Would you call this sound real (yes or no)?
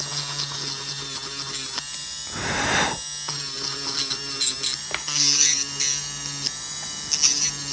yes